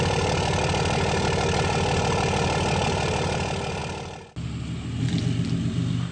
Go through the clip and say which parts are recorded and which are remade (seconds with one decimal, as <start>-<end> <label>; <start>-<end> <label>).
0.0-6.1 recorded